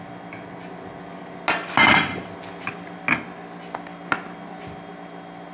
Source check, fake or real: real